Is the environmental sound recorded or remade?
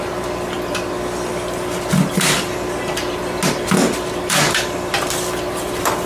recorded